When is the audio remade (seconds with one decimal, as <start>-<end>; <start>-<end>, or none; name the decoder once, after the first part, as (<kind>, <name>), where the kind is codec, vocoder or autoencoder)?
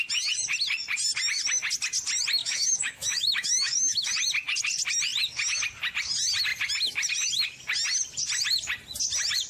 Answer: 2.4-4.1 (autoencoder, DAC-VAE)